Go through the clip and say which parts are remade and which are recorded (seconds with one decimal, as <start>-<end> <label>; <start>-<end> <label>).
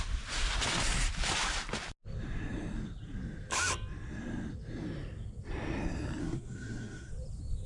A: 0.0-6.2 recorded; 6.2-7.1 remade; 7.1-7.7 recorded